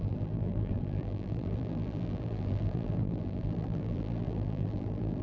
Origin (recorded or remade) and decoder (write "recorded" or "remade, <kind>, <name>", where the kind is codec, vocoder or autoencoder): remade, vocoder, BigVGAN v2